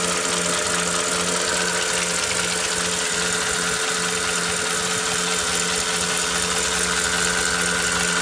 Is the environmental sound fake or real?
real